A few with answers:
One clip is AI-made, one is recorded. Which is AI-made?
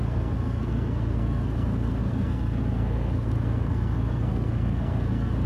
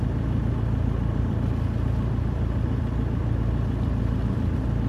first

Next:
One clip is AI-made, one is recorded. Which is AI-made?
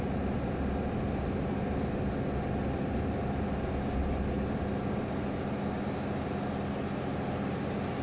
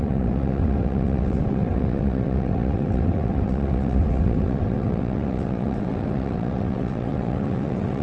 second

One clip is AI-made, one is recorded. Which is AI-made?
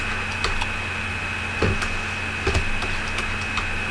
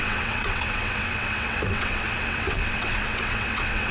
second